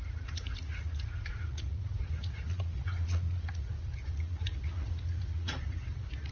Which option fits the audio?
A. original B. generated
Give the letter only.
B